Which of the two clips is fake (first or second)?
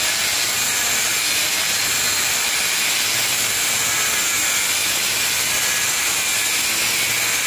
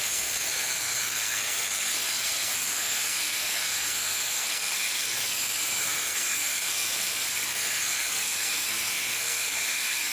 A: second